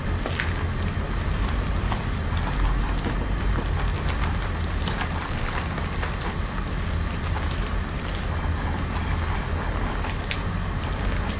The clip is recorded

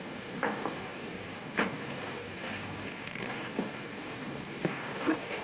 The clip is remade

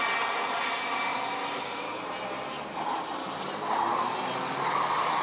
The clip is recorded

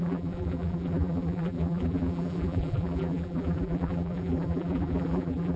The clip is remade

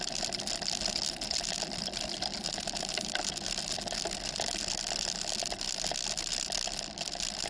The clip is recorded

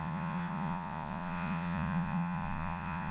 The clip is remade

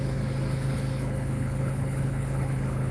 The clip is remade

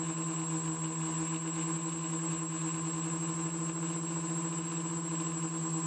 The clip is recorded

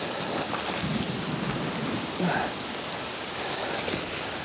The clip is recorded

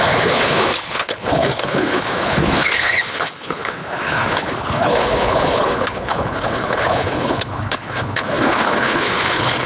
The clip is remade